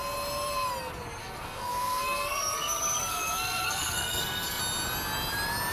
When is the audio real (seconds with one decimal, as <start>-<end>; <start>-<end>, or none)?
0.0-1.2; 4.6-5.7